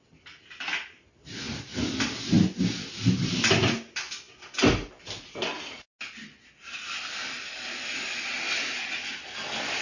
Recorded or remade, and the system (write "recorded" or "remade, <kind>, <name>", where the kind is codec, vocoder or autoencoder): recorded